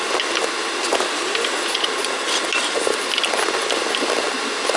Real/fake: real